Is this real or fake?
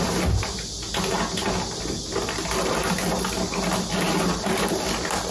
real